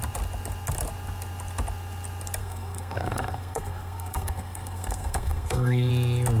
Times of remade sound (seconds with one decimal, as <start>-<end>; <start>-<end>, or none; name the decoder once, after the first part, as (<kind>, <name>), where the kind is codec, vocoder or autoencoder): 2.4-5.9 (codec, SNAC)